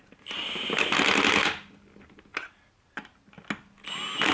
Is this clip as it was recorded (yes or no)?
yes